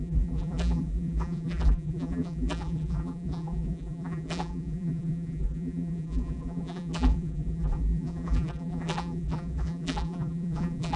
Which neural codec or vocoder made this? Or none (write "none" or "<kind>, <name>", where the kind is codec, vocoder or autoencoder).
vocoder, BigVGAN v2